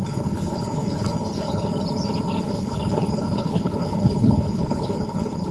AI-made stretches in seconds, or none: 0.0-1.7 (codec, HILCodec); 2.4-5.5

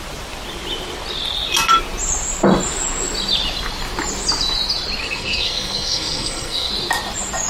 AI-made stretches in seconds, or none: 5.0-6.7 (codec, SNAC)

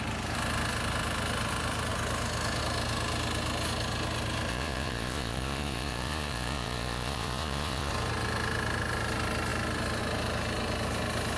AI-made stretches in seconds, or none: 4.5-7.9 (vocoder, Vocos)

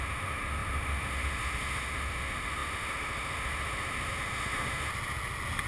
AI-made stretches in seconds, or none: 0.0-4.9 (autoencoder, DAC-VAE)